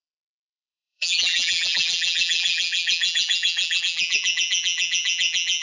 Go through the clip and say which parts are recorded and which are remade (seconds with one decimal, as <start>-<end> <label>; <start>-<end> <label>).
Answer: 0.0-5.6 remade